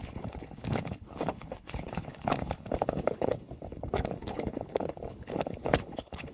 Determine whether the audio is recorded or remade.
remade